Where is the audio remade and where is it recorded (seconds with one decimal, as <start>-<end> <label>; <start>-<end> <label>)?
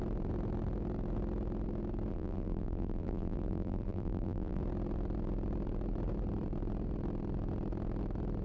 0.0-2.1 recorded; 2.1-4.6 remade; 4.6-8.4 recorded